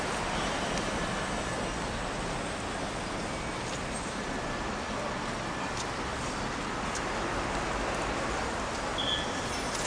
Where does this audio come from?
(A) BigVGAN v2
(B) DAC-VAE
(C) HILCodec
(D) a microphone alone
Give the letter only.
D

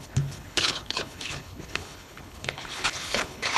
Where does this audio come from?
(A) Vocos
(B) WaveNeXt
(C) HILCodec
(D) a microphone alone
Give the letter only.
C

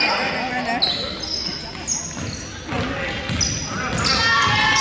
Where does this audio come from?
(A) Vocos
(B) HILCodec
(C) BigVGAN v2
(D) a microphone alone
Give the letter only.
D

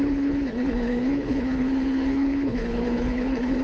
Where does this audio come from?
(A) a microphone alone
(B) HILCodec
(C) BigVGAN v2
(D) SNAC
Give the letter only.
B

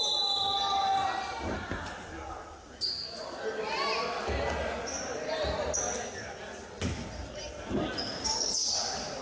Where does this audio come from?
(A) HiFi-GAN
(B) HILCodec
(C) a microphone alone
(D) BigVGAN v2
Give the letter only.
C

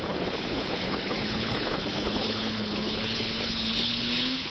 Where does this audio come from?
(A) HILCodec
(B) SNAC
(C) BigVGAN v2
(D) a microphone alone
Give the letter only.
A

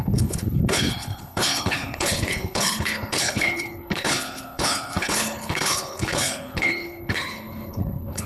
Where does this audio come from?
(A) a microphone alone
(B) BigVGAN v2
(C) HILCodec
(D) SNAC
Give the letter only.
C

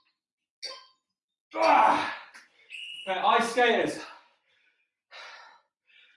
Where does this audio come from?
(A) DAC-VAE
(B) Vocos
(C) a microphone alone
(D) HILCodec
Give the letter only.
C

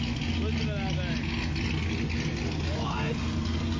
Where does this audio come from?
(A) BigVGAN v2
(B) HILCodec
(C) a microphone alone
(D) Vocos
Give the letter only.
C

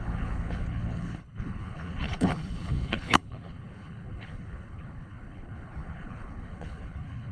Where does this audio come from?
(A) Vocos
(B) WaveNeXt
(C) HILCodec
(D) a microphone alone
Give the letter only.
C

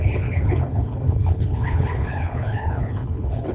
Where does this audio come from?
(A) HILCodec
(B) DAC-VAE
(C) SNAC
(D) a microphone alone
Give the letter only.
A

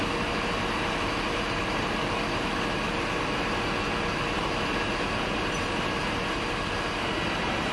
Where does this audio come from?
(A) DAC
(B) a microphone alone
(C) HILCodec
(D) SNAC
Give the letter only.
B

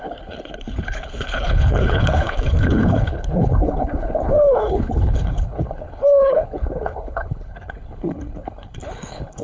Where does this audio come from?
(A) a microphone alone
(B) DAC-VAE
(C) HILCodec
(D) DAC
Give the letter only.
C